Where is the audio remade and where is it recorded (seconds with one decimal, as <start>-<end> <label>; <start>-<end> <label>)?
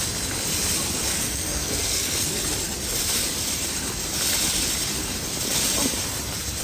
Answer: 0.0-1.1 recorded; 1.1-2.4 remade; 2.4-6.6 recorded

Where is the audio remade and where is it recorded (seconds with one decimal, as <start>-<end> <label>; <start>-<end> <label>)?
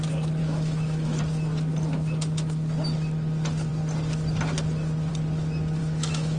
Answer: 0.0-0.4 recorded; 0.4-1.2 remade; 1.2-5.8 recorded; 5.8-6.4 remade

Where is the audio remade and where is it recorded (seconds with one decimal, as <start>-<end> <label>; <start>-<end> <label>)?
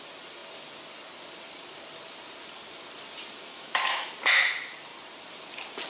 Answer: 0.0-3.4 recorded; 3.4-4.1 remade; 4.1-5.9 recorded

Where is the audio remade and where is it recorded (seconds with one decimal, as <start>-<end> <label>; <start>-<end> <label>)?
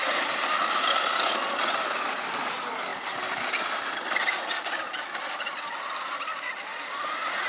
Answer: 0.0-7.5 recorded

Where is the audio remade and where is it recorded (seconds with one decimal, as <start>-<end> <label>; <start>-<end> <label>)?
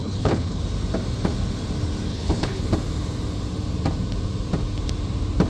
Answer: 0.0-0.6 remade; 0.6-2.1 recorded; 2.1-2.6 remade; 2.6-5.5 recorded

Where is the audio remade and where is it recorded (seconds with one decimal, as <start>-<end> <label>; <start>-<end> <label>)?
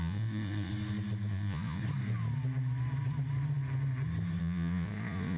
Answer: 0.0-0.7 remade; 0.7-1.3 recorded; 1.3-1.8 remade; 1.8-4.4 recorded; 4.4-5.4 remade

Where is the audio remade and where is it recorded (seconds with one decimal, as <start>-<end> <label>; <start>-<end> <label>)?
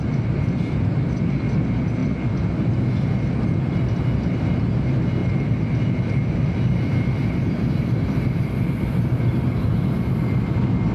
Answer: 0.0-5.2 recorded; 5.2-10.1 remade; 10.1-10.9 recorded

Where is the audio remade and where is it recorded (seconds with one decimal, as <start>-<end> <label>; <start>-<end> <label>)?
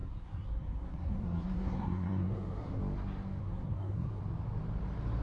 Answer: 0.0-2.8 remade; 2.8-3.4 recorded; 3.4-4.2 remade; 4.2-5.2 recorded